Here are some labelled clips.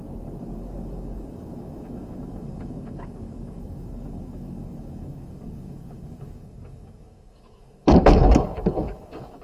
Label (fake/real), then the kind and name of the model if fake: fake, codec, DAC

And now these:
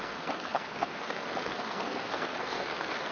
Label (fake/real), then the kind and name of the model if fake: fake, codec, SNAC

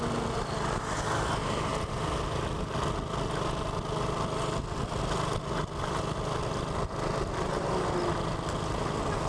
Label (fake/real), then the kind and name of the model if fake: real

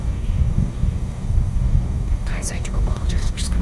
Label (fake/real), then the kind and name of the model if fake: fake, codec, DAC